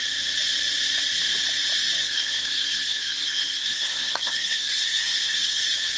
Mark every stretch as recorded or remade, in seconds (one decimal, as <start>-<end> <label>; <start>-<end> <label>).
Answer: 0.0-2.0 recorded; 2.0-5.6 remade; 5.6-6.0 recorded